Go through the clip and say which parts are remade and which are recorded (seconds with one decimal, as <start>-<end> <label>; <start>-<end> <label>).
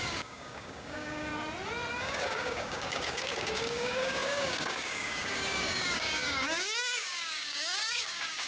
0.0-1.3 remade; 1.3-2.0 recorded; 2.0-8.5 remade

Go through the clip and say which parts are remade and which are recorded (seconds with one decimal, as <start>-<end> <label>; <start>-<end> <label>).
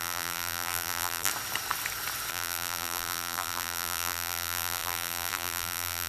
0.0-1.3 remade; 1.3-2.3 recorded; 2.3-6.1 remade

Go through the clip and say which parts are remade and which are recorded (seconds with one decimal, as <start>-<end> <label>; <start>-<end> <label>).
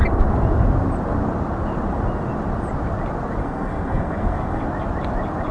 0.0-3.4 recorded; 3.4-4.6 remade; 4.6-5.5 recorded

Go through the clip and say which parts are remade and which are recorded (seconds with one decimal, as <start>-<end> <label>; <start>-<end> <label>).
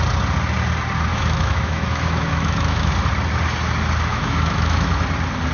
0.0-1.1 recorded; 1.1-2.9 remade; 2.9-4.1 recorded; 4.1-5.0 remade; 5.0-5.5 recorded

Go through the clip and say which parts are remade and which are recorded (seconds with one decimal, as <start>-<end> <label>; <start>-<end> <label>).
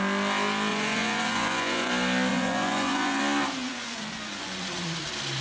0.0-0.7 recorded; 0.7-1.9 remade; 1.9-2.3 recorded; 2.3-3.2 remade; 3.2-3.6 recorded; 3.6-5.0 remade; 5.0-5.4 recorded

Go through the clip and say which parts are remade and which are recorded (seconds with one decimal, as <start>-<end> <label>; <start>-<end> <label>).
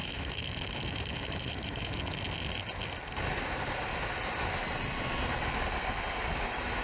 0.0-2.0 remade; 2.0-6.8 recorded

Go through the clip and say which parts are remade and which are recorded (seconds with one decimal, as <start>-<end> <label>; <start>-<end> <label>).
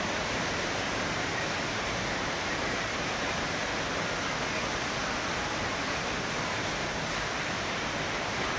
0.0-3.7 remade; 3.7-5.3 recorded; 5.3-8.6 remade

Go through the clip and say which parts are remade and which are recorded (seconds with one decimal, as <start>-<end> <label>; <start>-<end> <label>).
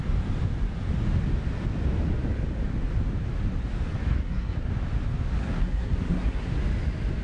0.0-4.1 recorded; 4.1-4.7 remade; 4.7-5.4 recorded; 5.4-6.6 remade; 6.6-7.2 recorded